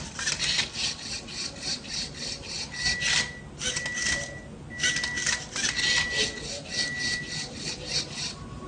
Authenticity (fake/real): real